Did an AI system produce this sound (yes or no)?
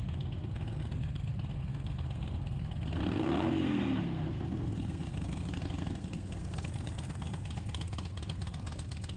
yes